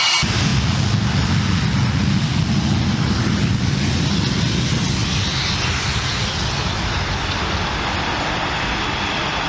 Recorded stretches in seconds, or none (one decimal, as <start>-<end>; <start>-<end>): 0.0-9.5